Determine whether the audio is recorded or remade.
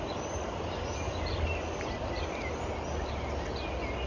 recorded